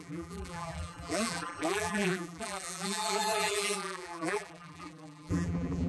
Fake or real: fake